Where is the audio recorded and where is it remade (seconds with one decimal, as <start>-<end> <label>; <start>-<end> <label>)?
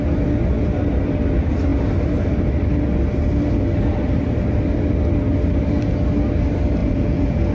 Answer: 0.0-6.8 recorded; 6.8-7.5 remade